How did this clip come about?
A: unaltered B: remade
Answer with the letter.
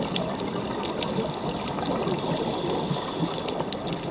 A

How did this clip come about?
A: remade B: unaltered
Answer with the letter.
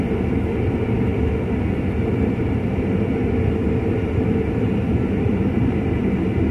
B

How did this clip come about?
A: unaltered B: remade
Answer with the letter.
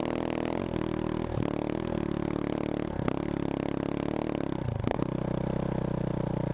A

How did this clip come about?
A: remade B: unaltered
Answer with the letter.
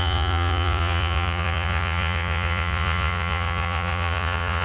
A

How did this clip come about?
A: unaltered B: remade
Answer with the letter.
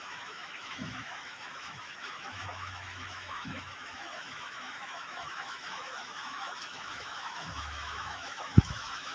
B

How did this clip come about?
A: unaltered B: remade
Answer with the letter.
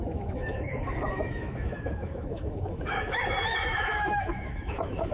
B